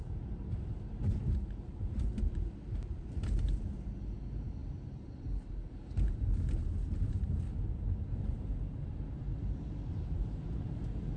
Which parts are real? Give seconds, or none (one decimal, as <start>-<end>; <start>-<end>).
7.5-8.2